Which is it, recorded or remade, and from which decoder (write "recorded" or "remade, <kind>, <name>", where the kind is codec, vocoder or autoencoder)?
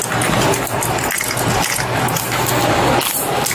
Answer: recorded